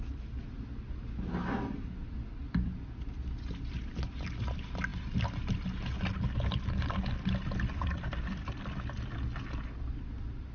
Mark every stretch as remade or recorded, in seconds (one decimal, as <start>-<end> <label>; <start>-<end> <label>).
0.0-10.5 recorded